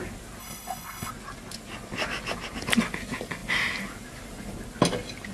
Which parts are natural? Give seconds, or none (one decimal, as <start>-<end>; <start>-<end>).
0.0-0.4; 1.1-5.3